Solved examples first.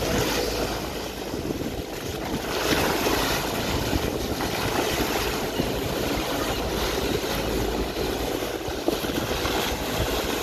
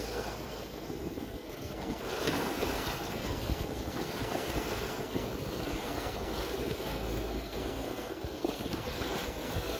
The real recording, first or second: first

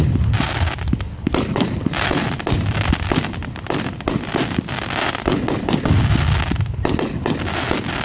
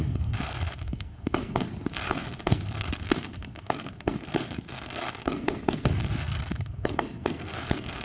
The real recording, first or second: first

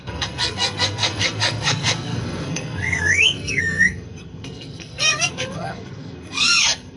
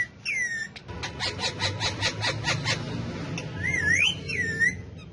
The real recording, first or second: second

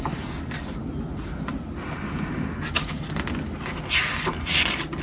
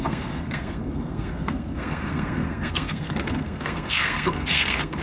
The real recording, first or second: first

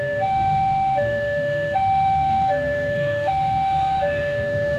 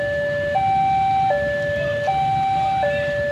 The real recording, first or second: second